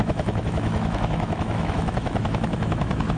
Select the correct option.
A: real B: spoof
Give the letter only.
B